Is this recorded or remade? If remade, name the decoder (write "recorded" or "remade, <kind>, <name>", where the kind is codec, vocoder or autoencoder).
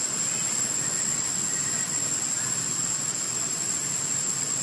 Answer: recorded